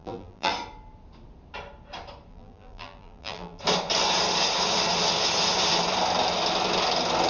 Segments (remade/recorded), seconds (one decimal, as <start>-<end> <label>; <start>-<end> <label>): 0.0-0.5 remade; 0.5-2.3 recorded; 2.3-3.6 remade; 3.6-7.3 recorded